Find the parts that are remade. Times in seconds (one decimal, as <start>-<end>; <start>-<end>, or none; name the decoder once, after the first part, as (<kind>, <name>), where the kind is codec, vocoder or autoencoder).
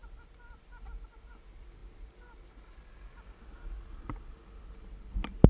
none